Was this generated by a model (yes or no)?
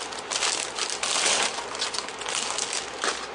no